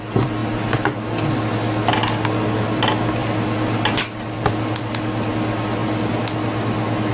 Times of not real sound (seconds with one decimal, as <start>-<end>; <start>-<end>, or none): 3.2-5.3